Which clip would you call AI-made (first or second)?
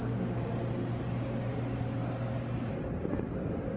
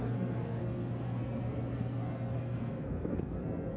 second